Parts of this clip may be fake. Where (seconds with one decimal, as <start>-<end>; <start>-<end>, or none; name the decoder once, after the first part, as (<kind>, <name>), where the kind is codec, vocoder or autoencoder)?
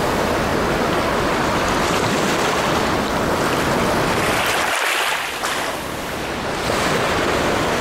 none